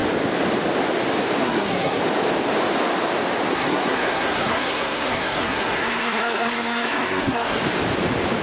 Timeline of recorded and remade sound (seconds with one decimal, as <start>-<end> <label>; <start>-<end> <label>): 0.0-1.4 recorded; 1.4-2.0 remade; 2.0-3.5 recorded; 3.5-7.6 remade; 7.6-8.4 recorded